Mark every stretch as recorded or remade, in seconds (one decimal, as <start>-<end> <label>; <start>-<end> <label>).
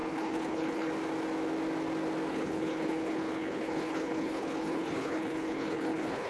0.0-0.9 remade; 0.9-2.3 recorded; 2.3-6.3 remade